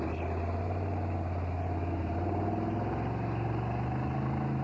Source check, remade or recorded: recorded